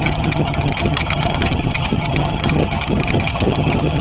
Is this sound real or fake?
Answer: fake